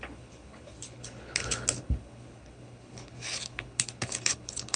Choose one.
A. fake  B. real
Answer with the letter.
A